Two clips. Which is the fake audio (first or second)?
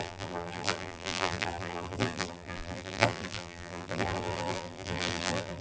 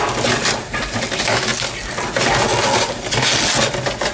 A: first